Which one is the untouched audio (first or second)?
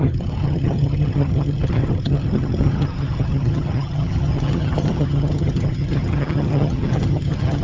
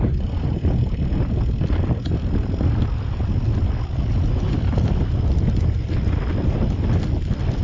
second